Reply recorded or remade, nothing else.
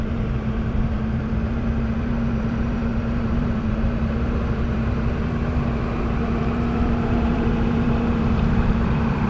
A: remade